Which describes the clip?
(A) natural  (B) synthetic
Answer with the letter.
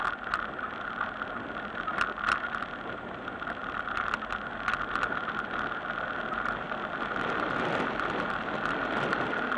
A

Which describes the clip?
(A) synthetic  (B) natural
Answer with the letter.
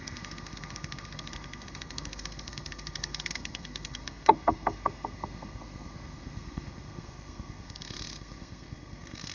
A